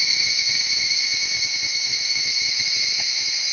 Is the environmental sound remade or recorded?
remade